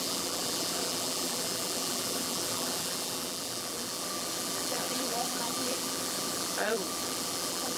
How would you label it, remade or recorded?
remade